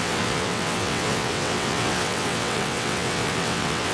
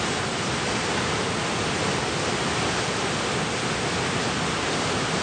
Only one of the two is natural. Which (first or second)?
second